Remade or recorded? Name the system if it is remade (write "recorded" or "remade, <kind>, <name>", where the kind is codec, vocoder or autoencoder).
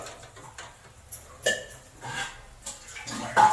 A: recorded